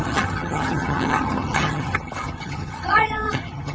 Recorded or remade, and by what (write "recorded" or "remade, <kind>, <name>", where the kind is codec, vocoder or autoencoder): remade, vocoder, HiFi-GAN